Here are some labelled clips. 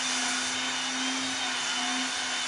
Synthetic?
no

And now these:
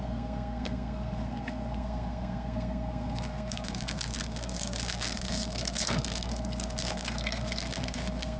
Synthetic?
yes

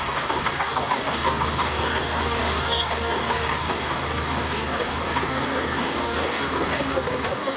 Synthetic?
yes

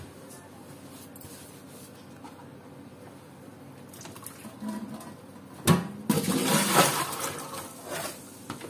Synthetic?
no